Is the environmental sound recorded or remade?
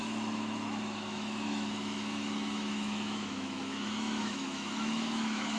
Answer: remade